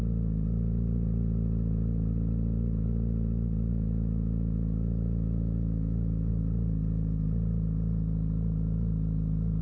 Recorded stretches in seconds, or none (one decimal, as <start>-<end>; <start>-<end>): 0.0-3.7; 6.3-9.6